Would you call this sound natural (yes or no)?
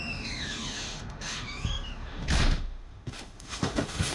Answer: no